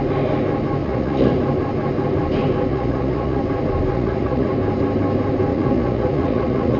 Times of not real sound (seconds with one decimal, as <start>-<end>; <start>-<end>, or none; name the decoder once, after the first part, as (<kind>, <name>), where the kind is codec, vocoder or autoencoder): 0.8-1.3 (vocoder, Vocos); 2.7-3.4; 3.9-4.5; 5.5-6.8